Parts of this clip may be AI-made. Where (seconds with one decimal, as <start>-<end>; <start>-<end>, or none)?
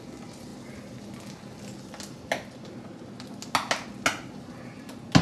none